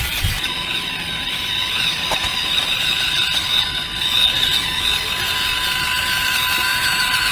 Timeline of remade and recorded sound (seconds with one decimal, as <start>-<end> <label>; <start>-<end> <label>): 0.0-6.7 recorded; 6.7-7.3 remade